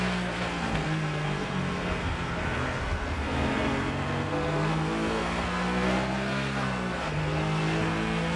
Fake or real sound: fake